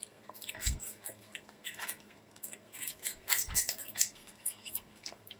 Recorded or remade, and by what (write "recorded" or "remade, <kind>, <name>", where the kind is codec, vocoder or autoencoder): remade, codec, SNAC